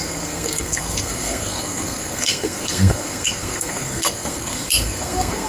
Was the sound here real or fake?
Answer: fake